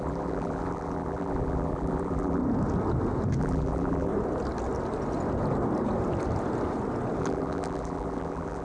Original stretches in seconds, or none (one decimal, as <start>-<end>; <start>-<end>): 2.4-3.4; 4.1-7.2